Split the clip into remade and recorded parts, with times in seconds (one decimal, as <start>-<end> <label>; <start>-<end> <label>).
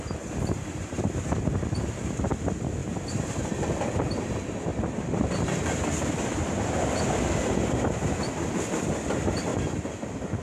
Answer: 0.0-2.8 recorded; 2.8-3.4 remade; 3.4-4.7 recorded; 4.7-7.3 remade; 7.3-9.5 recorded; 9.5-10.4 remade